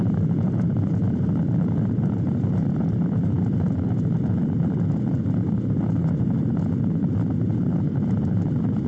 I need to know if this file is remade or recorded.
remade